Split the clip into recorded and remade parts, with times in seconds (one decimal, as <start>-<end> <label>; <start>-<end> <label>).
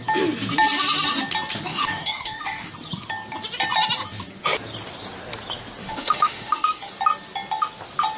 0.0-1.7 recorded; 1.7-2.7 remade; 2.7-5.8 recorded; 5.8-6.9 remade; 6.9-8.2 recorded